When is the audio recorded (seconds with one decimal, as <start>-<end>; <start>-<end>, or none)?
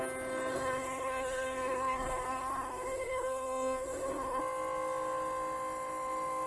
0.0-0.5; 4.4-6.5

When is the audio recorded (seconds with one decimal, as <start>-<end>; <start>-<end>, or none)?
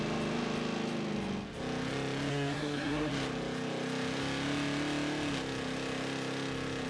0.0-2.3; 3.1-6.9